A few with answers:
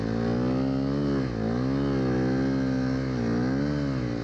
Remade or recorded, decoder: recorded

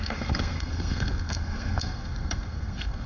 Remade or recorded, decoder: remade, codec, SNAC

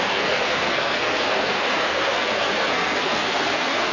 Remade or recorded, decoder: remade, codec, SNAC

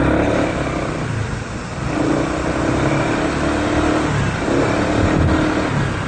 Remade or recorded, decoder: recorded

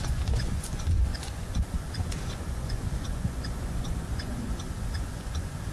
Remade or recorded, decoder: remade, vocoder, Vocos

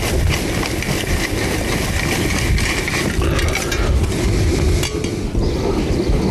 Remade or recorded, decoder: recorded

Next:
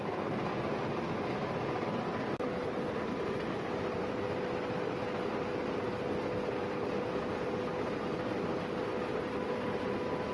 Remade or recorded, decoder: recorded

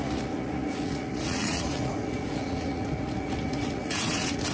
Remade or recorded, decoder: remade, vocoder, Vocos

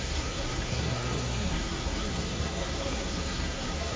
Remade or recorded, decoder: remade, codec, SNAC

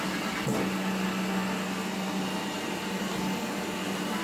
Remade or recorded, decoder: recorded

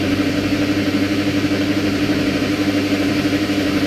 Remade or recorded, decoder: remade, vocoder, BigVGAN v2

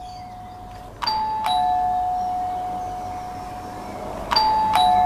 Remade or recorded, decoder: recorded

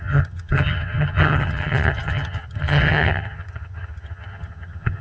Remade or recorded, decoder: remade, vocoder, HiFi-GAN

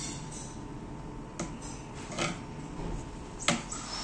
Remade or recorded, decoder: recorded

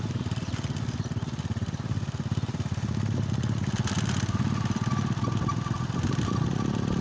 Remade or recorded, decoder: recorded